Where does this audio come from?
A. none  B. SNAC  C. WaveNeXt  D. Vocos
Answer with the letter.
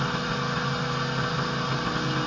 A